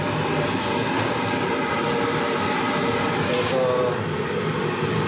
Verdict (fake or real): real